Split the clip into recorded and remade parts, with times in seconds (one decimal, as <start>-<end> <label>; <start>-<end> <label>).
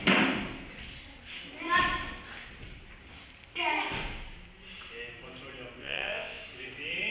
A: 0.0-5.8 recorded; 5.8-6.4 remade; 6.4-7.1 recorded